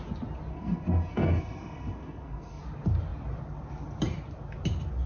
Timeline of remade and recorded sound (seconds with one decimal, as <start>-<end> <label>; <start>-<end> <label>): 0.0-0.5 recorded; 0.5-2.6 remade; 2.6-5.1 recorded